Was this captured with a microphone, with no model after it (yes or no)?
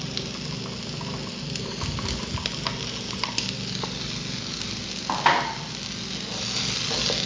yes